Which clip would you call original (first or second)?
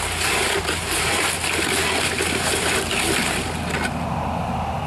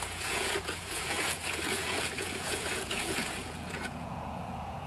first